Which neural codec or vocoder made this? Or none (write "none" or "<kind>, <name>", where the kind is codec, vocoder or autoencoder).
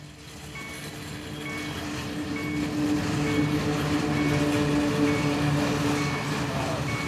none